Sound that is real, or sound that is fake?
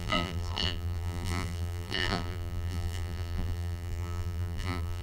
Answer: fake